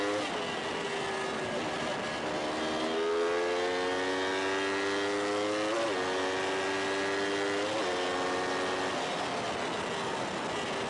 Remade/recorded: recorded